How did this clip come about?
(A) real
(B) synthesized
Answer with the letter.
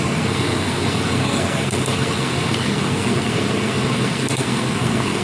B